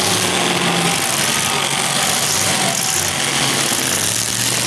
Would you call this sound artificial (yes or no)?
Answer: no